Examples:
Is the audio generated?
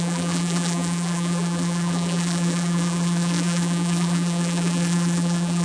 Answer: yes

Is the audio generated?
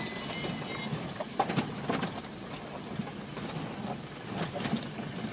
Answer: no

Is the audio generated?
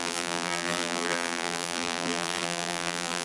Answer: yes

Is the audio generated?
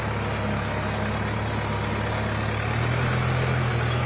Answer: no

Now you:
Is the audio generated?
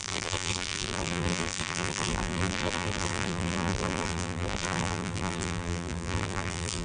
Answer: yes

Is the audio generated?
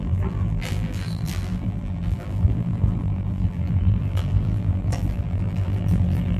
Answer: yes